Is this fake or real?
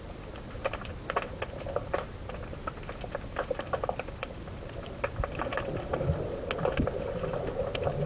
real